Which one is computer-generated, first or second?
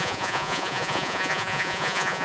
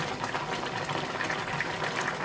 first